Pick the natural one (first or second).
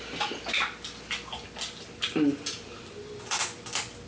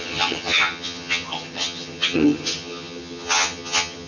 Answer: first